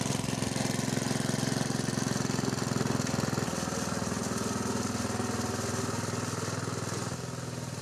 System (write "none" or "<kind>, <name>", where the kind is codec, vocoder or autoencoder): none